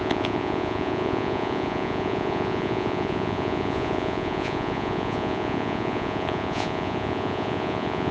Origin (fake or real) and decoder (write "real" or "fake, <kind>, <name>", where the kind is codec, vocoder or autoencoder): fake, vocoder, Vocos